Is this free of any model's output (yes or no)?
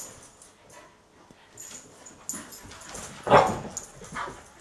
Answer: yes